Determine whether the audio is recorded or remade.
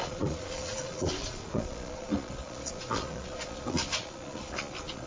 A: remade